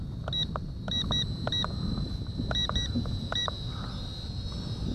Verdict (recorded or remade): recorded